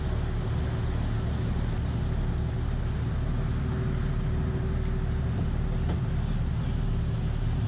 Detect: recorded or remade recorded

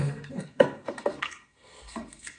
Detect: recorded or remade remade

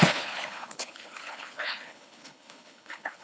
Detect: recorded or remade remade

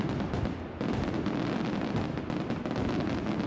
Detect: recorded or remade recorded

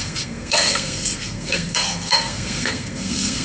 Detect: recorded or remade remade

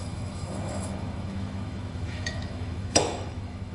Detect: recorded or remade remade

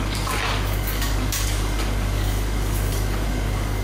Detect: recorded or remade remade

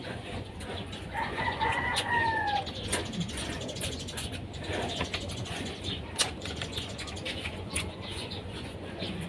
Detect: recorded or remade remade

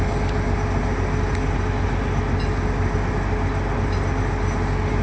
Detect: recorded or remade recorded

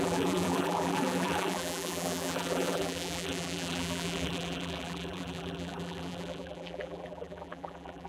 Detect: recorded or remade remade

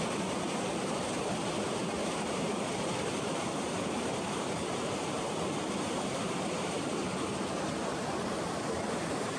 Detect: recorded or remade remade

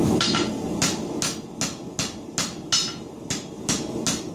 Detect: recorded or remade recorded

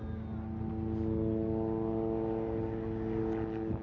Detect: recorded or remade recorded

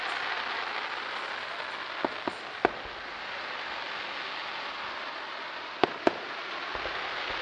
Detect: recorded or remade recorded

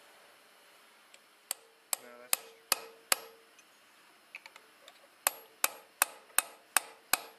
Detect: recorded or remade recorded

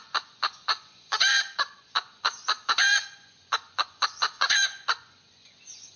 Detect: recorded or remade remade